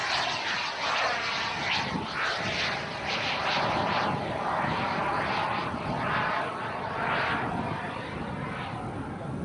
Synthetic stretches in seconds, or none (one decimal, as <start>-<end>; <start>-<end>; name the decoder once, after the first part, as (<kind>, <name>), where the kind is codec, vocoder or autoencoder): none